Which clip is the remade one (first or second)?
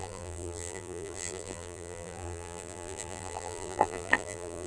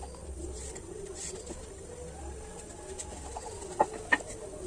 first